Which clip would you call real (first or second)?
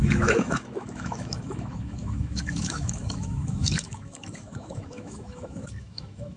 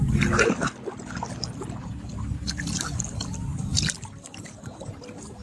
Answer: second